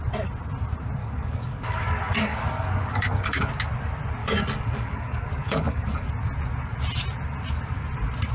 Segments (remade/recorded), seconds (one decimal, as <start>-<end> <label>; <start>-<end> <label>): 0.0-1.0 recorded; 1.0-3.5 remade; 3.5-4.2 recorded; 4.2-6.1 remade; 6.1-8.3 recorded

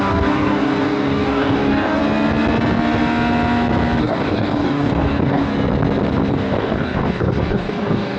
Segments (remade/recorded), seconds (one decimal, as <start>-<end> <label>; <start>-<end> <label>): 0.0-2.0 remade; 2.0-4.0 recorded; 4.0-5.5 remade; 5.5-6.3 recorded; 6.3-8.2 remade